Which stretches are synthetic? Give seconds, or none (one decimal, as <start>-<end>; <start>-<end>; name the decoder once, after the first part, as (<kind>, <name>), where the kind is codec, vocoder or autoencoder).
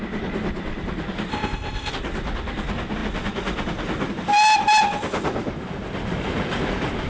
1.3-1.9 (codec, ZipCodec)